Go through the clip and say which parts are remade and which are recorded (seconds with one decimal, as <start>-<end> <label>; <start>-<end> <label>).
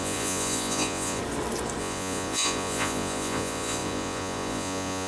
0.0-1.2 remade; 1.2-1.8 recorded; 1.8-5.1 remade